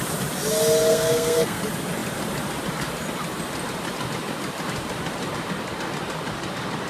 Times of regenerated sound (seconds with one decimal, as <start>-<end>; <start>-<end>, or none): 0.9-1.6